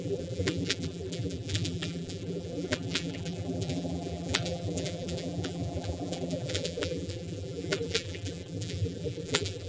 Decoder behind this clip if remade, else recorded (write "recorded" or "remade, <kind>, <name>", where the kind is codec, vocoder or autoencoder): remade, vocoder, BigVGAN v2